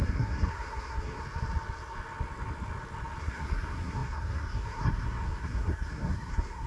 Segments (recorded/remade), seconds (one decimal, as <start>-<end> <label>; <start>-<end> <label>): 0.0-1.2 remade; 1.2-3.2 recorded; 3.2-6.7 remade